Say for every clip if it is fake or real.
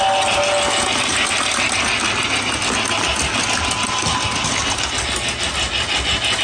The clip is real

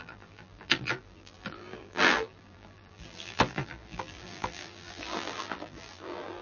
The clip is fake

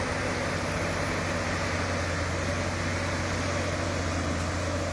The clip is real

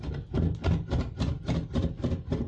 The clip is real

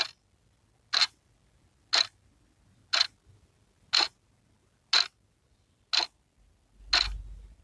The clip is real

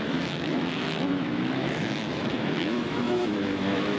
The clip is fake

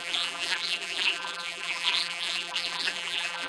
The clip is fake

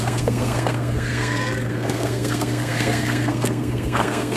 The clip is fake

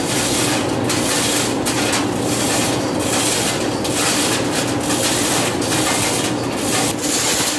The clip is real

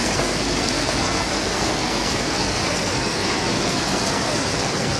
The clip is fake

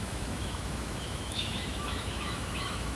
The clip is fake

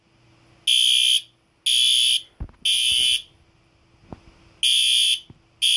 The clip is real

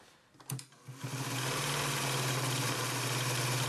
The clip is real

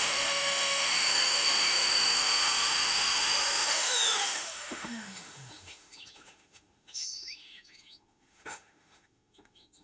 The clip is fake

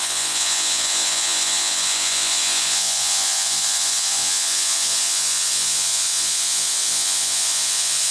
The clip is fake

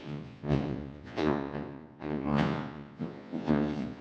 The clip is fake